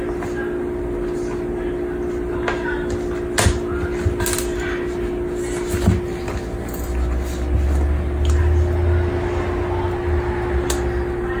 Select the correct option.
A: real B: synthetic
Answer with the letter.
A